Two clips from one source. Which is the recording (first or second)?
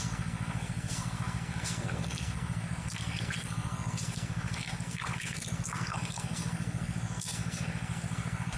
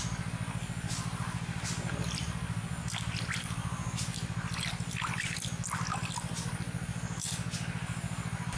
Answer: second